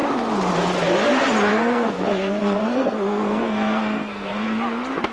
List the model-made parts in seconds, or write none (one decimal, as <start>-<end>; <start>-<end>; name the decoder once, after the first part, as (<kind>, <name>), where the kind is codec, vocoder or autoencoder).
1.5-4.6 (codec, SNAC)